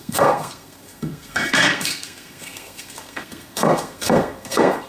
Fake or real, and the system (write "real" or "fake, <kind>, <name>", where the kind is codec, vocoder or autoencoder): fake, codec, SNAC